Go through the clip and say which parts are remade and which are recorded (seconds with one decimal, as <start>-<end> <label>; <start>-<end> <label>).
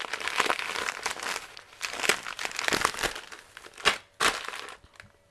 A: 0.0-5.3 recorded